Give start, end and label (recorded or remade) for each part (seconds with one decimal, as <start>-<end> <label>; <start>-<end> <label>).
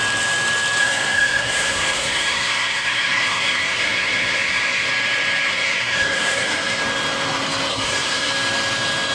0.0-0.8 recorded; 0.8-4.9 remade; 4.9-5.5 recorded; 5.5-6.8 remade; 6.8-7.7 recorded; 7.7-8.3 remade; 8.3-9.1 recorded